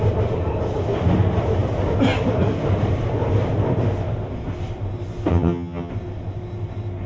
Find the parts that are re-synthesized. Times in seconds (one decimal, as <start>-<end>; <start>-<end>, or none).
5.3-5.9